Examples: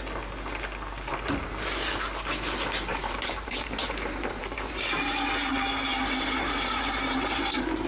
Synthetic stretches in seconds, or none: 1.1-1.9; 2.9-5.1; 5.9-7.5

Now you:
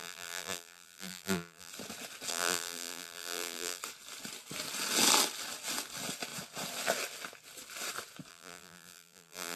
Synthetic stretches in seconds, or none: 0.0-1.7; 2.3-3.8; 8.3-9.6

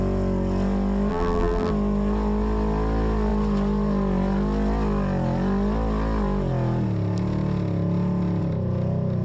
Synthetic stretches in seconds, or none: 1.1-1.7

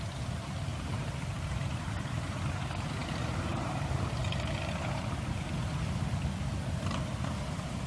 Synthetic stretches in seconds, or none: 3.0-5.7; 6.5-7.1

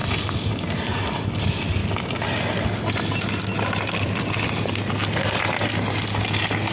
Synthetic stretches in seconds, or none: 0.0-6.7

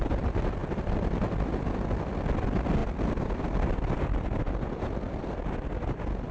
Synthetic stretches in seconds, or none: 0.0-6.3